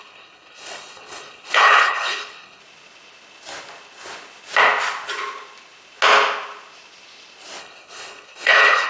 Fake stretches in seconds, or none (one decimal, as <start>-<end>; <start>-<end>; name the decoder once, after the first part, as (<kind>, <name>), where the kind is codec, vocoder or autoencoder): 0.0-2.6 (codec, HILCodec); 7.6-8.9